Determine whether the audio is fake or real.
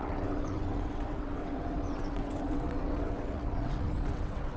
fake